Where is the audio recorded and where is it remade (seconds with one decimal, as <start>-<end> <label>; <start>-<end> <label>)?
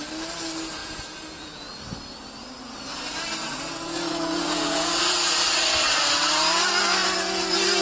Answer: 0.0-0.8 recorded; 0.8-1.6 remade; 1.6-3.4 recorded; 3.4-5.0 remade; 5.0-7.8 recorded